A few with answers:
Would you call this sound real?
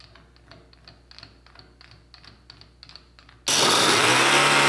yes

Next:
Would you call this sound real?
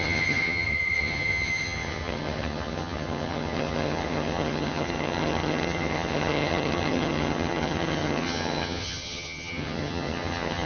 no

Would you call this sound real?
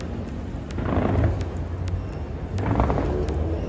yes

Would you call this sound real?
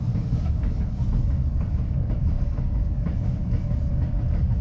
no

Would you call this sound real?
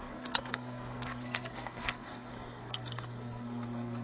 no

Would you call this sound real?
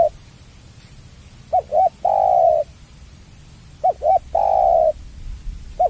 yes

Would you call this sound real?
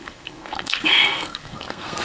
no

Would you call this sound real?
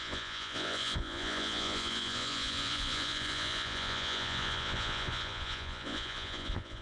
no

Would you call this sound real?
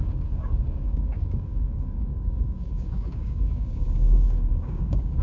no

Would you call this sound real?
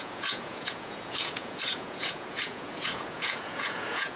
no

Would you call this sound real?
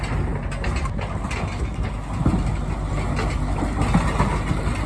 yes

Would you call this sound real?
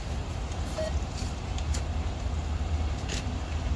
no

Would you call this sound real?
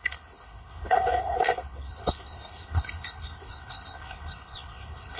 no